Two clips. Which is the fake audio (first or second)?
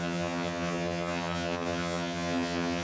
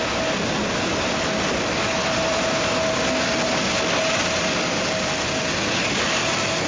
first